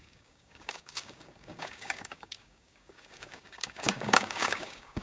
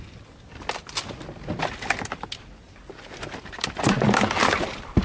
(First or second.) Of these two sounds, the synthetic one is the first